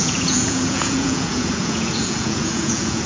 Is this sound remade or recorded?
remade